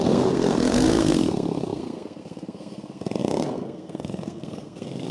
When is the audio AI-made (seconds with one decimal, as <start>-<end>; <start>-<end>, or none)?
0.0-5.1